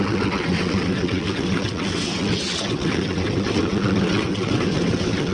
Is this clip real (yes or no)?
no